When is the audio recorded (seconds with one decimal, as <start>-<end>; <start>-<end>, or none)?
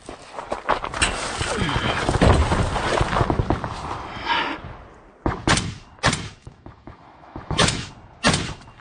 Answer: 0.0-6.4; 7.9-8.8